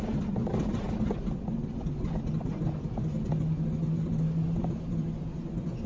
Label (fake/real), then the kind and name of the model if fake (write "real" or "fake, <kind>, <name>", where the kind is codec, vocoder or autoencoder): real